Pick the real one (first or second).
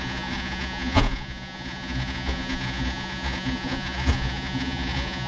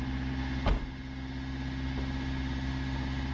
second